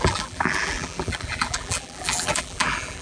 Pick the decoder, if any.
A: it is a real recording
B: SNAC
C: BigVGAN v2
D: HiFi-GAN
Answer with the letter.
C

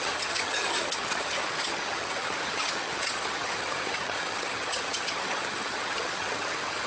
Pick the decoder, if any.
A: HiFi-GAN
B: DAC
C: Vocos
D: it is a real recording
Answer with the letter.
A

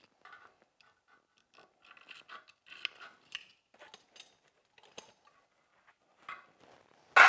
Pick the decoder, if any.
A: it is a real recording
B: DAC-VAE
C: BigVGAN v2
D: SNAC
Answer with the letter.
A